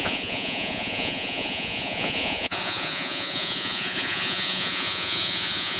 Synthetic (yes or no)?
yes